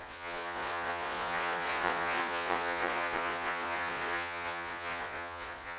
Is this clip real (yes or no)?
no